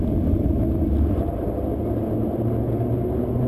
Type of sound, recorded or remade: recorded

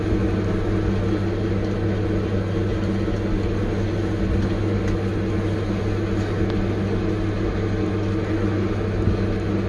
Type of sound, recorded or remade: recorded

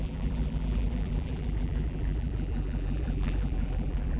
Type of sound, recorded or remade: remade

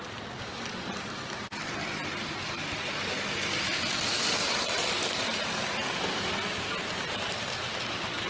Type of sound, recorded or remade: remade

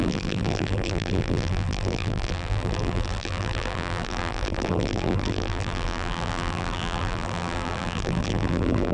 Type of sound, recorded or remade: remade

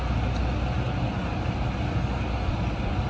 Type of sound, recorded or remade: recorded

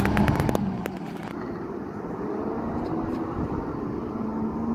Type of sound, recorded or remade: recorded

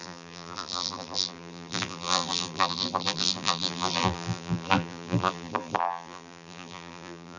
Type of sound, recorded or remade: remade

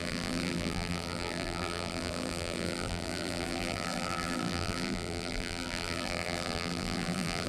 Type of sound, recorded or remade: remade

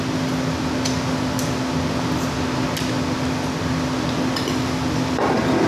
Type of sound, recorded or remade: recorded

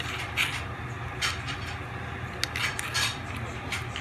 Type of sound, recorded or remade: recorded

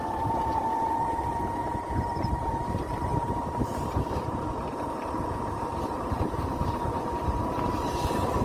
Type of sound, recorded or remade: remade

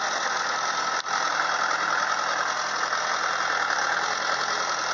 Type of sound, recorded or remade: recorded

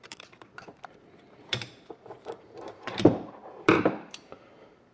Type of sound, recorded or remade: remade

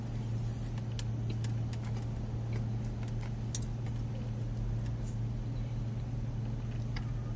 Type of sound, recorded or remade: recorded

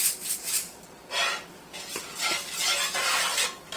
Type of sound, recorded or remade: recorded